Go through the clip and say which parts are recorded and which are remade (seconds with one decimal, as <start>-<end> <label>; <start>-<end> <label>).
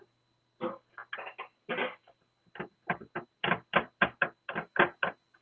0.0-5.4 recorded